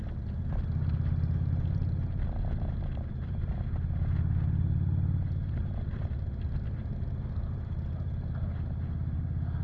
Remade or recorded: recorded